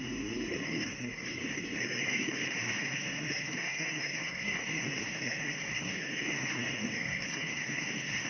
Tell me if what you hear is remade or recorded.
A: remade